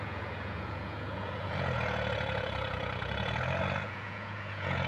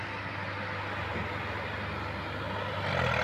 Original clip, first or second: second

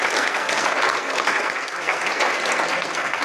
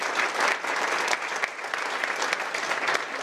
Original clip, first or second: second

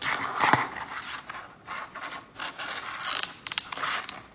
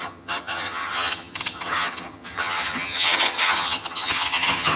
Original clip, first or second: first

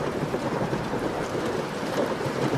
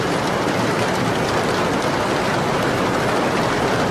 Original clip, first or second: second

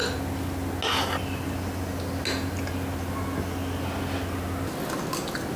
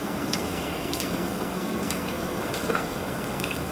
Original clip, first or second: first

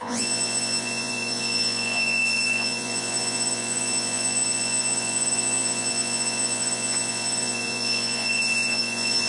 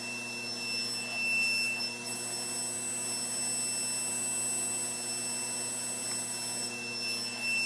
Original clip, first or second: second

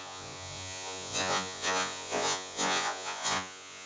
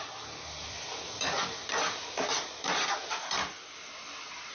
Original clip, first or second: second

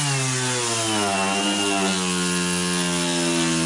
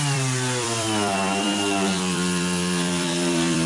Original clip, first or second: first